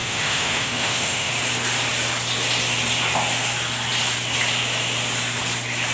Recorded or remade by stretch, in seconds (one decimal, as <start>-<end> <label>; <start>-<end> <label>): 0.0-1.3 remade; 1.3-5.9 recorded